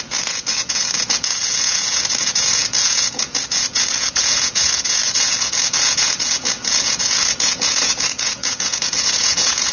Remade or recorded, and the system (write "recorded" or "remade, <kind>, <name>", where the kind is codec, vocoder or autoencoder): remade, vocoder, Vocos